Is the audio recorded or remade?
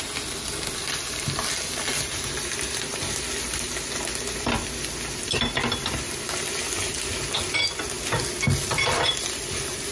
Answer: recorded